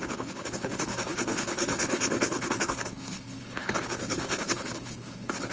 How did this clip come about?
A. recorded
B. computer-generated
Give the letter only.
B